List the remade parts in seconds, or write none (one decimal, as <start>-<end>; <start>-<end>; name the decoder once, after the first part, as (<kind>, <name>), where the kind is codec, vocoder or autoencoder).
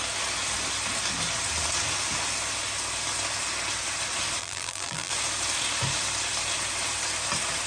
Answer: 4.4-5.1 (vocoder, BigVGAN v2)